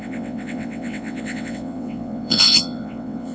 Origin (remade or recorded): remade